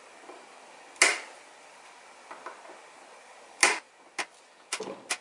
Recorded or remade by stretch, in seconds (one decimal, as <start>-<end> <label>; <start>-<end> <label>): 0.0-5.2 recorded